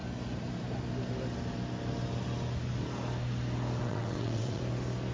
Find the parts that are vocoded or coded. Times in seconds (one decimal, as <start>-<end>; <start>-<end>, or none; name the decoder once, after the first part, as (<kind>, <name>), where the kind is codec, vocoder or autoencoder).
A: 3.8-4.6 (vocoder, WaveNeXt)